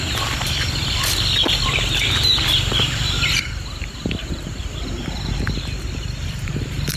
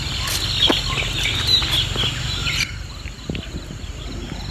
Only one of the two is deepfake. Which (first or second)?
first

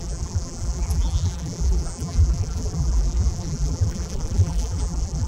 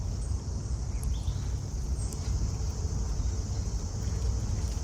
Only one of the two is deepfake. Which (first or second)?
first